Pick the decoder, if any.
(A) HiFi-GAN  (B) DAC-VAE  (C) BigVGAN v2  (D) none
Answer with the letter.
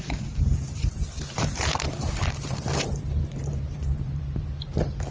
C